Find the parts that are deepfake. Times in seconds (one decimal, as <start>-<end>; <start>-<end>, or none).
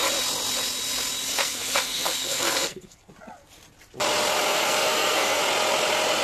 1.3-3.1; 4.5-5.4